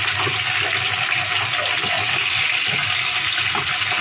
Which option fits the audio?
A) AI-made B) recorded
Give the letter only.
B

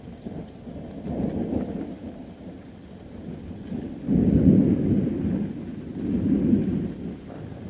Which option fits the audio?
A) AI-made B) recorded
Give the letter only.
B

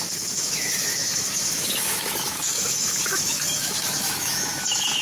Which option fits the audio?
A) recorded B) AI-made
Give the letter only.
B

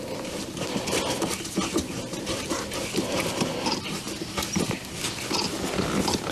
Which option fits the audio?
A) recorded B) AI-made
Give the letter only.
A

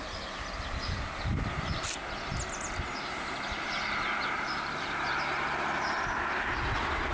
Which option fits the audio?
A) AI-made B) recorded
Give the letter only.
B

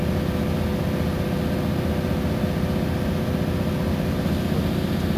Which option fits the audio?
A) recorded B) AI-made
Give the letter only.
A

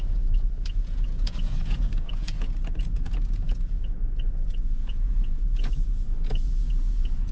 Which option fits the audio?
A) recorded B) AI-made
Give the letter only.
B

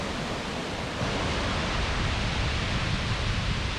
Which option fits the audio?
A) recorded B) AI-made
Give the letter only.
A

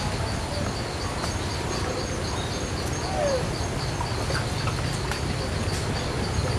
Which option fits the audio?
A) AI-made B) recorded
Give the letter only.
B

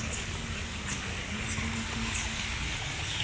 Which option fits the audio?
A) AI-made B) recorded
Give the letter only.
A